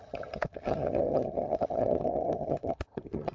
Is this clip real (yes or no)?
no